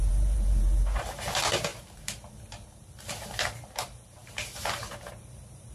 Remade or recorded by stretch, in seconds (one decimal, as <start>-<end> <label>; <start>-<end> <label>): 0.0-5.7 remade